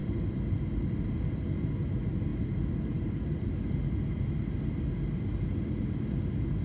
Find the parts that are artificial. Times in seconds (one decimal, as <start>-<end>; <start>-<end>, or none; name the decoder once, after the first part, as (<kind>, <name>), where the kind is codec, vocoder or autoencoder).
none